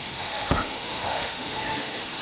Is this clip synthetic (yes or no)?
yes